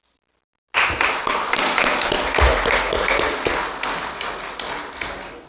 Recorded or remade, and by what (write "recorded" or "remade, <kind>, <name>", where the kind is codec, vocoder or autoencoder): recorded